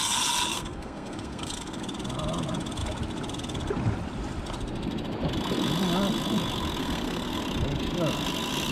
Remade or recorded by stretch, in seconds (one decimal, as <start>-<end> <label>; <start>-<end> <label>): 0.0-0.5 recorded; 0.5-1.8 remade; 1.8-6.8 recorded; 6.8-7.4 remade; 7.4-8.7 recorded